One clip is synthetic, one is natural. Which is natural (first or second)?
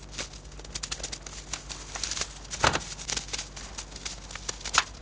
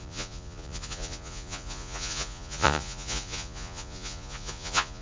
first